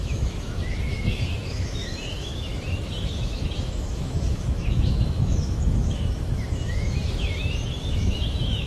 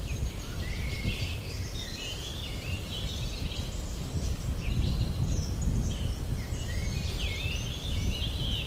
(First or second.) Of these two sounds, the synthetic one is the first